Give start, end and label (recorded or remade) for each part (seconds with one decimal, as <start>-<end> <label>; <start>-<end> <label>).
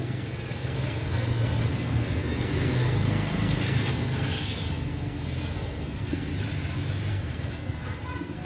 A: 0.0-6.3 remade; 6.3-7.1 recorded; 7.1-8.4 remade